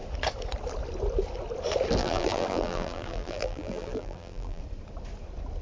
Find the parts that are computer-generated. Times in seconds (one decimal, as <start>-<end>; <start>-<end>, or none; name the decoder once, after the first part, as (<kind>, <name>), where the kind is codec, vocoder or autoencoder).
2.0-4.6 (vocoder, BigVGAN v2)